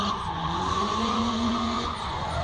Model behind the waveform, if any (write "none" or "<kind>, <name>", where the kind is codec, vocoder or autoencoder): vocoder, Vocos